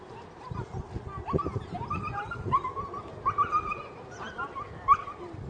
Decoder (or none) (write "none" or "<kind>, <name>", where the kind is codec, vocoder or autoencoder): none